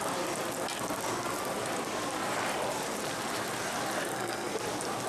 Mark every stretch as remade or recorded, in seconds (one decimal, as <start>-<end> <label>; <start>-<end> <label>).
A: 0.0-4.1 recorded; 4.1-4.6 remade; 4.6-5.1 recorded

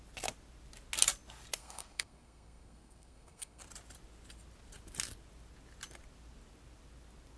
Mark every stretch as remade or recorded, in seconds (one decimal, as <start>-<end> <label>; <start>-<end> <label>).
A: 0.0-1.6 recorded; 1.6-3.6 remade; 3.6-7.4 recorded